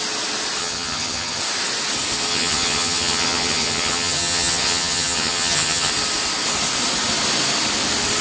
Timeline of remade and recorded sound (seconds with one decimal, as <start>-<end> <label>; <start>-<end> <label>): 0.0-0.6 recorded; 0.6-1.4 remade; 1.4-2.3 recorded; 2.3-5.9 remade; 5.9-8.2 recorded